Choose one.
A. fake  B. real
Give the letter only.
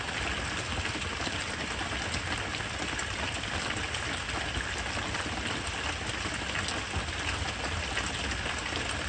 B